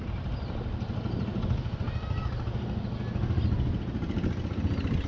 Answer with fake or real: real